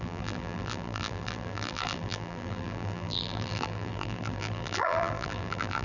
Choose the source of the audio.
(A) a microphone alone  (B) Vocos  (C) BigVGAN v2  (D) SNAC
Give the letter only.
C